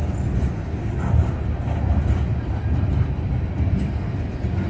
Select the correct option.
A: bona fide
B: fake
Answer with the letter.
A